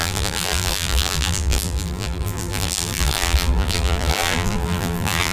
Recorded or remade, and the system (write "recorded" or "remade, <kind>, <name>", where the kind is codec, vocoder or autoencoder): remade, vocoder, BigVGAN v2